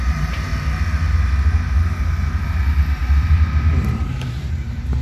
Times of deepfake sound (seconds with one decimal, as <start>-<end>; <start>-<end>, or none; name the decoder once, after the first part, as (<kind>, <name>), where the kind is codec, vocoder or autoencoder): 0.0-0.5 (vocoder, BigVGAN v2); 1.8-5.0